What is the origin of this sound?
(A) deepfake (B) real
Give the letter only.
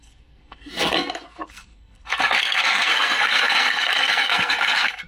A